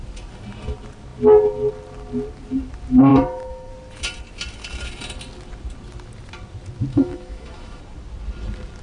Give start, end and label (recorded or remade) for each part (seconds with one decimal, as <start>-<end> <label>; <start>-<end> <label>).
0.0-3.1 recorded; 3.1-3.7 remade; 3.7-6.9 recorded; 6.9-7.8 remade; 7.8-8.8 recorded